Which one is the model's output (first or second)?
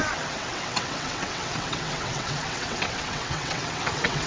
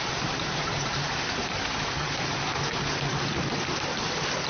first